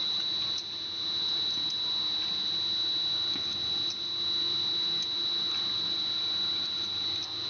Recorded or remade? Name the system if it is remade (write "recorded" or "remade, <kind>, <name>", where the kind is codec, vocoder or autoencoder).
recorded